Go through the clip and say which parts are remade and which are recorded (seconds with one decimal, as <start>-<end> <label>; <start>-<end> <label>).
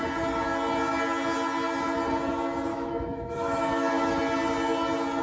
0.0-2.7 recorded; 2.7-4.2 remade; 4.2-5.2 recorded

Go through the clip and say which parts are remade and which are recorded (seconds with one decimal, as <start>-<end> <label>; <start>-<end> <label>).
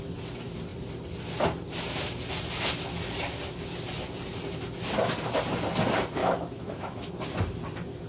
0.0-6.2 recorded; 6.2-7.1 remade; 7.1-8.1 recorded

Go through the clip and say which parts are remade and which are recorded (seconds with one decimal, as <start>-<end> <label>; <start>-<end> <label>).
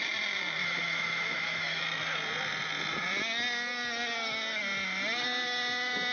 0.0-0.6 recorded; 0.6-1.8 remade; 1.8-6.1 recorded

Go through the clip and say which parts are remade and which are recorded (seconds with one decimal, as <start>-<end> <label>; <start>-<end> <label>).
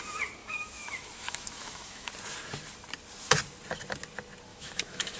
0.0-0.4 recorded; 0.4-2.1 remade; 2.1-4.5 recorded; 4.5-5.2 remade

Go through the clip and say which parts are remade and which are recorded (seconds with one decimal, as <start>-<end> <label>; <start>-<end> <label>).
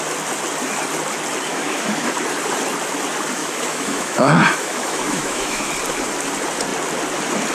0.0-1.5 recorded; 1.5-2.1 remade; 2.1-3.4 recorded; 3.4-5.7 remade; 5.7-7.5 recorded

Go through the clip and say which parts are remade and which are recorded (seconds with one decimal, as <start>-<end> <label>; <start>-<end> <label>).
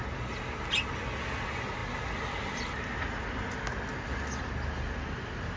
0.0-5.6 recorded